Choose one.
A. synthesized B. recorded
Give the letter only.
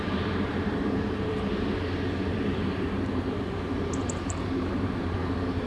A